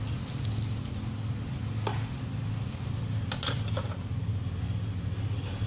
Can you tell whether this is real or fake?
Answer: real